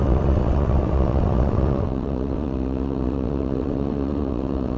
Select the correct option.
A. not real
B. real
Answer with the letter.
A